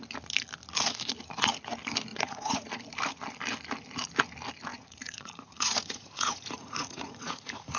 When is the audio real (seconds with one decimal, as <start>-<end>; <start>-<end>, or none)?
0.0-2.1; 2.7-4.7